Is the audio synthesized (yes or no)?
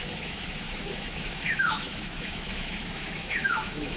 yes